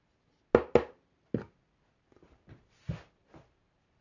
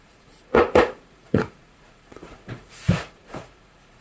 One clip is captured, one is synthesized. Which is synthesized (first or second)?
second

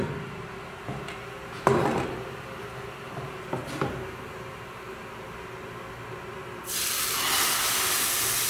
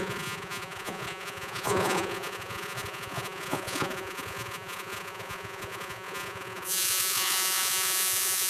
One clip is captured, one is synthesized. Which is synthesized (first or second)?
second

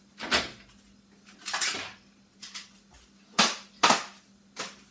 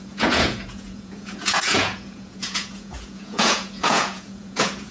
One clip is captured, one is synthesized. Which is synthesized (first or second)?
second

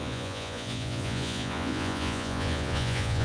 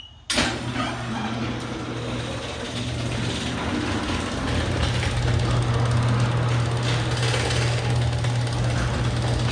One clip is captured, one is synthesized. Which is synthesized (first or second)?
first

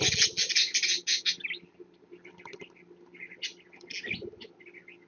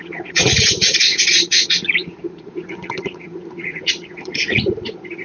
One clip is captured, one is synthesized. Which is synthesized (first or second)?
second